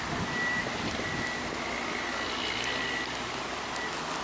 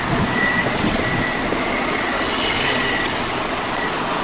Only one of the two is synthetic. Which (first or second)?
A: second